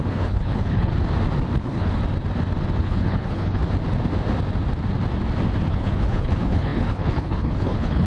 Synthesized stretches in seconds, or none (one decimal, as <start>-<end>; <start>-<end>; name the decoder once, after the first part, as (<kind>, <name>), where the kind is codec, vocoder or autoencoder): 0.0-0.9 (codec, HILCodec); 1.6-2.0; 2.8-3.6; 5.7-8.1